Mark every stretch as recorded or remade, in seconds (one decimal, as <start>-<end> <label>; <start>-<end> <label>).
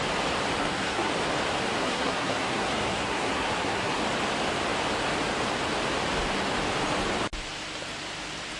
0.0-0.6 recorded; 0.6-1.1 remade; 1.1-1.8 recorded; 1.8-4.0 remade; 4.0-8.6 recorded